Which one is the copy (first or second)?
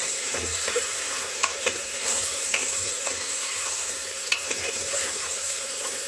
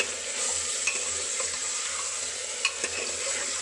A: first